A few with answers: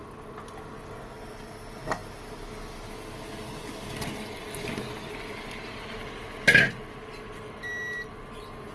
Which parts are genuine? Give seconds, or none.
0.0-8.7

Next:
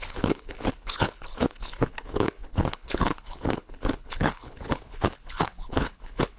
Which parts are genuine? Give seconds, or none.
none

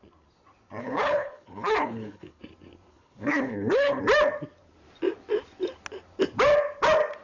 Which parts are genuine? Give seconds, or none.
0.0-0.8; 2.4-2.9; 4.0-7.2